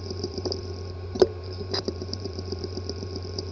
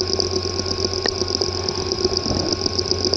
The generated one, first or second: first